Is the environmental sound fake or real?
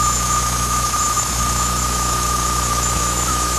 fake